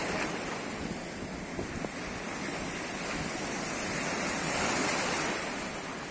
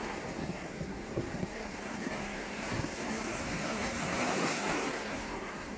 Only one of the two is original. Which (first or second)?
first